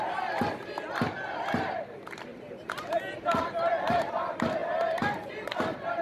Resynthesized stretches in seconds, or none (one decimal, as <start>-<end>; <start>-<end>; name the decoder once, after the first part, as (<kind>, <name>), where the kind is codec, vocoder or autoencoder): 2.3-4.1 (vocoder, BigVGAN v2)